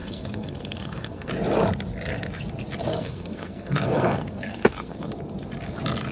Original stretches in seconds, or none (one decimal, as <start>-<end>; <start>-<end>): 1.3-2.9; 5.1-6.1